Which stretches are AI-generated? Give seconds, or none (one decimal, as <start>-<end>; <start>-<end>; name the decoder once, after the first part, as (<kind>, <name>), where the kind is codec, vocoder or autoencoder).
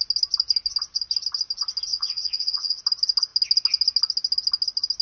1.9-2.8 (vocoder, WaveNeXt)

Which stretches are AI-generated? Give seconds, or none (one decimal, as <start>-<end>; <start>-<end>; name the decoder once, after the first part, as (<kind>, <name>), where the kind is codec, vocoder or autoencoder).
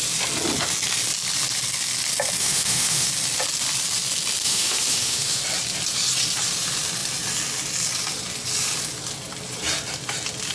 2.4-3.1 (autoencoder, DAC-VAE); 4.4-5.4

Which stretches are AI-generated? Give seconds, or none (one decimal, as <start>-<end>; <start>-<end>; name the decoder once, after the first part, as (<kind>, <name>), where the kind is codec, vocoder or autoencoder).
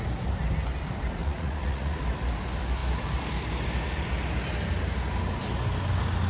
1.2-2.0 (vocoder, Vocos)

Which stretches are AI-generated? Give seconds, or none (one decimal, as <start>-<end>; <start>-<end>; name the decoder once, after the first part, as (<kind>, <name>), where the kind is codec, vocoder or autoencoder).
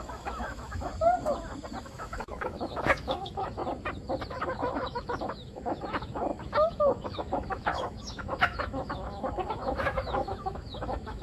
0.0-0.9 (autoencoder, DAC-VAE); 1.8-3.6; 4.3-11.2